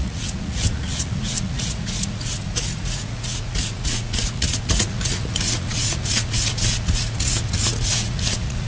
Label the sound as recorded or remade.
remade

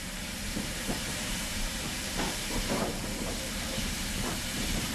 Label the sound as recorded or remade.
remade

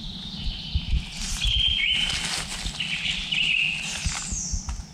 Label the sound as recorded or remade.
recorded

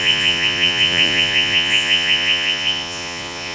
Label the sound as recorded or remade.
remade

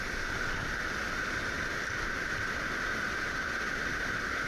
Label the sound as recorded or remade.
recorded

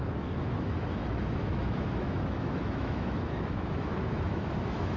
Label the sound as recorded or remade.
remade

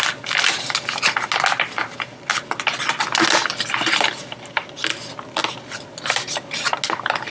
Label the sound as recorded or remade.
recorded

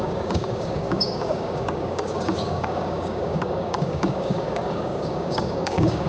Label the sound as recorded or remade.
remade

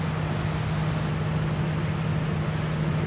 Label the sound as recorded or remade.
recorded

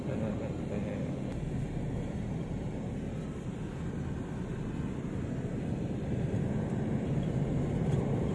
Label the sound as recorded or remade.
recorded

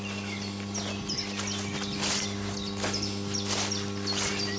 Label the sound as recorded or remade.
recorded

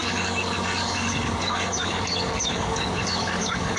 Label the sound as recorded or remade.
remade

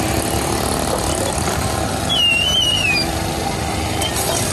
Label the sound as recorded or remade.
recorded